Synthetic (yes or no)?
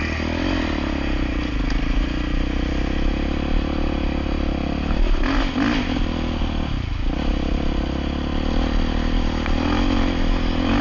no